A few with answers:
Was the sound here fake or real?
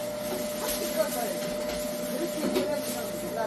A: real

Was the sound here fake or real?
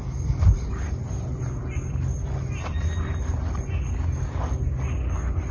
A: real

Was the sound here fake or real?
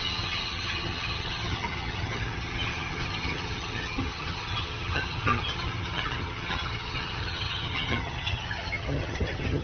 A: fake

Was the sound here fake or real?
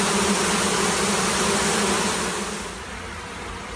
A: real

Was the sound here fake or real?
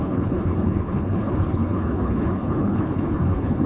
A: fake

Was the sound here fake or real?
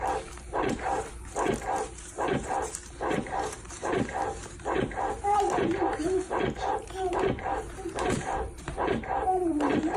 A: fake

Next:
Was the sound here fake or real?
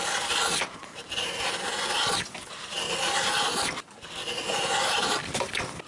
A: real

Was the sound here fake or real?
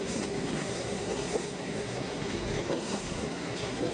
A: fake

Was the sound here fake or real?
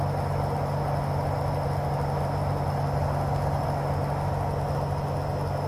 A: real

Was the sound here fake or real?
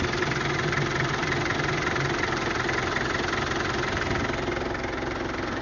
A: real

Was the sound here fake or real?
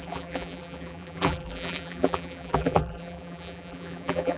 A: fake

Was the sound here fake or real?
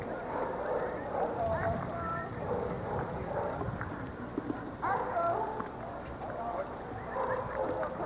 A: fake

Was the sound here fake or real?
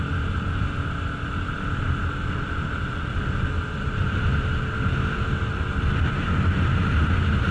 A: real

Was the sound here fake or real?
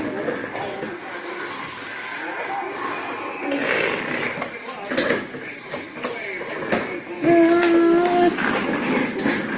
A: real